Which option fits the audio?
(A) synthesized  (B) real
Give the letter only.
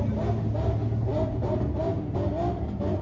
B